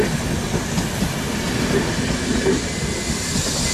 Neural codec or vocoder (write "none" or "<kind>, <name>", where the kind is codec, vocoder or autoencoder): none